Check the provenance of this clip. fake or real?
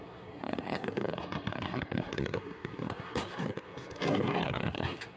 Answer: fake